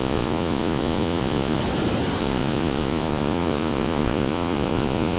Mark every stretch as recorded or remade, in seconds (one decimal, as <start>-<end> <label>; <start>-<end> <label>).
0.0-1.6 remade; 1.6-2.2 recorded; 2.2-5.2 remade